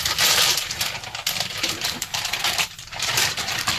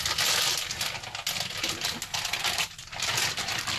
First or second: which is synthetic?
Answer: first